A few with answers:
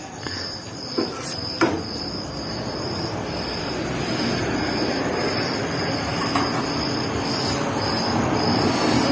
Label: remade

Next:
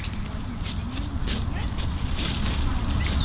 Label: remade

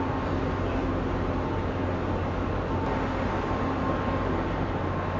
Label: recorded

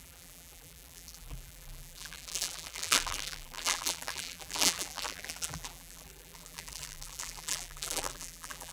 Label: remade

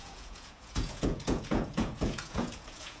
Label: remade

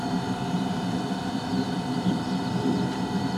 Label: remade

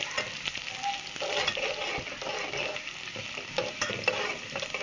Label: recorded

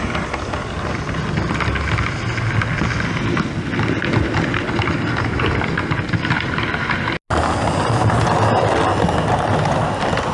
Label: recorded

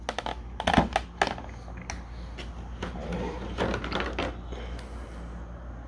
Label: recorded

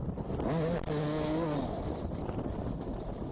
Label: recorded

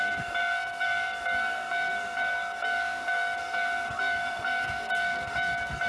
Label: remade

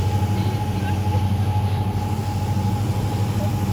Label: recorded